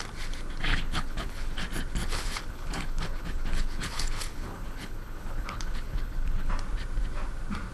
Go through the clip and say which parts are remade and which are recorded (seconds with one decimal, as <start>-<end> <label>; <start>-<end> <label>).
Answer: 0.0-0.7 recorded; 0.7-1.6 remade; 1.6-2.0 recorded; 2.0-6.5 remade; 6.5-7.7 recorded